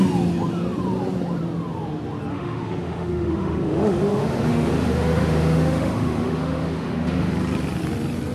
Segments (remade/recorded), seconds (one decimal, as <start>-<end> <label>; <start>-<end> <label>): 0.0-2.3 recorded; 2.3-7.3 remade; 7.3-8.3 recorded